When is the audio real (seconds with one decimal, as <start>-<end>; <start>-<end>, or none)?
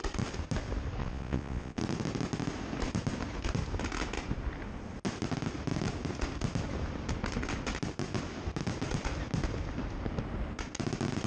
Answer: 0.0-1.0; 1.8-11.3